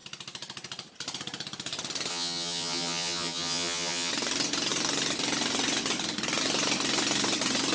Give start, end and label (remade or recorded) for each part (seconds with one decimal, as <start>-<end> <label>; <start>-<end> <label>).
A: 0.0-2.1 recorded; 2.1-4.1 remade; 4.1-7.7 recorded